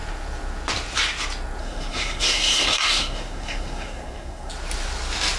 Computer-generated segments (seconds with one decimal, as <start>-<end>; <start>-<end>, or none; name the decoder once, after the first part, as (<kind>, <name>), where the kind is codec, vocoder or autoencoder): 1.6-4.5 (codec, SNAC)

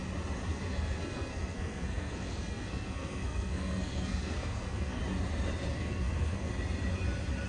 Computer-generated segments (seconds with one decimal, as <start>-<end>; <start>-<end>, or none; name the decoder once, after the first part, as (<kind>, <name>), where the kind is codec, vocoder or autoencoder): 0.5-5.0 (codec, SNAC); 5.7-6.5

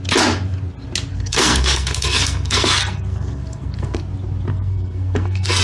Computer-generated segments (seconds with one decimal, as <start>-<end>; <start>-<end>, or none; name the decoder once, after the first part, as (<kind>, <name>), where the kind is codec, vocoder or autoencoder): 1.1-4.0 (codec, SNAC); 4.5-5.6

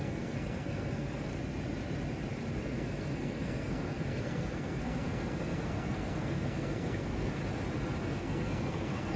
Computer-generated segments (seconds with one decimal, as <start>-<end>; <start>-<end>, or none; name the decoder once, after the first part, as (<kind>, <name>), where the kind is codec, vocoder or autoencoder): 0.0-1.3 (codec, SNAC); 2.6-7.4; 8.0-9.2

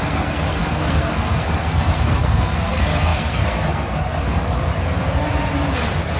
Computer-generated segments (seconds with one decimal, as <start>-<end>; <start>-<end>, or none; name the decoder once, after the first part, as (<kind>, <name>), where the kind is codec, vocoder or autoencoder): 0.0-4.7 (codec, SNAC)